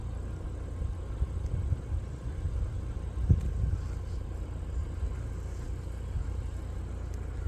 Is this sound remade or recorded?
recorded